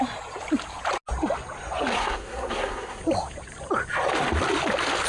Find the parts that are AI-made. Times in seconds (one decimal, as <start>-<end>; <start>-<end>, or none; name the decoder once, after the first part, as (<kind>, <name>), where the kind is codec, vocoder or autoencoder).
1.9-3.0 (codec, SNAC)